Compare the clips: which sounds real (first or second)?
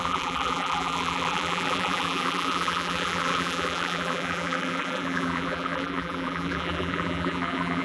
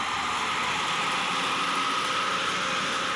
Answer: second